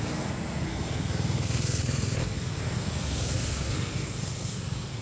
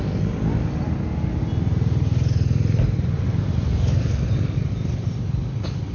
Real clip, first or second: second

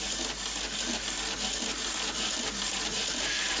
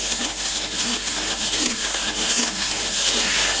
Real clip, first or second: first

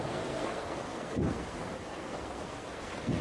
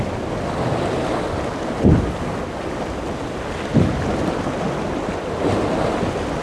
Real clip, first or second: second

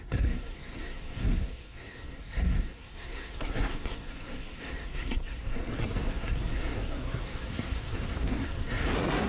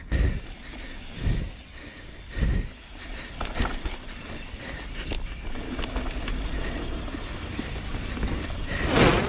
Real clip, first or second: second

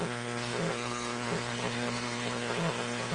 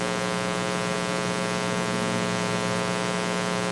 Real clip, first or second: second